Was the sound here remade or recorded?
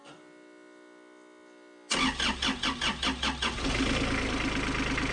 recorded